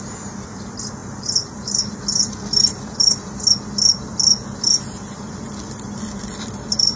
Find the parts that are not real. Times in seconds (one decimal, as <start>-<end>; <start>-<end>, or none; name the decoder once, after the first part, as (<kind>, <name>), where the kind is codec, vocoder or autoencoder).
1.0-1.9 (vocoder, BigVGAN v2)